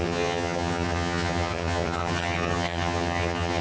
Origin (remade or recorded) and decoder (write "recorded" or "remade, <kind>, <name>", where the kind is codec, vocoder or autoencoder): remade, vocoder, HiFi-GAN